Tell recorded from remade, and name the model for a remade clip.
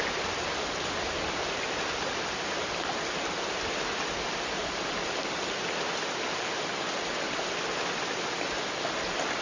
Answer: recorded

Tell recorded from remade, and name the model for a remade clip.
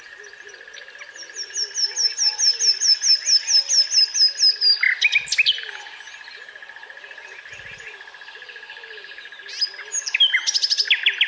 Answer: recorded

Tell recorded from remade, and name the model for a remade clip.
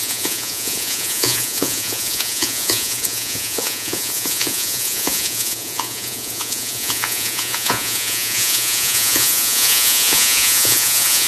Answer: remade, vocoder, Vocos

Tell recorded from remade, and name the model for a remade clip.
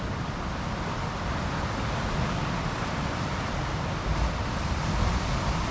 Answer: recorded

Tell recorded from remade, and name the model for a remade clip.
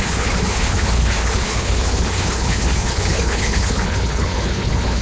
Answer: remade, codec, HILCodec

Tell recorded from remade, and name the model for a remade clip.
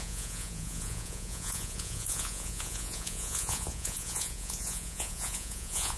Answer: remade, vocoder, Vocos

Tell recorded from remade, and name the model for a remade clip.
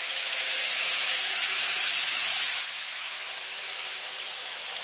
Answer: remade, autoencoder, DAC-VAE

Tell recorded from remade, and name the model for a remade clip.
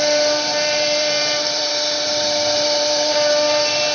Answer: remade, vocoder, BigVGAN v2